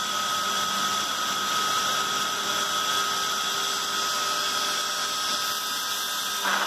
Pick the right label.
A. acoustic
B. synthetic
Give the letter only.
A